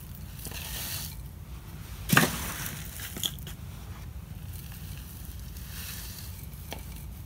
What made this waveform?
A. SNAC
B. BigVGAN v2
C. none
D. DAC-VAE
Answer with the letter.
C